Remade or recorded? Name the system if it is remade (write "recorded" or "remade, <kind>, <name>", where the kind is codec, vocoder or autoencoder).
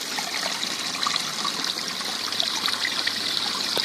remade, vocoder, BigVGAN v2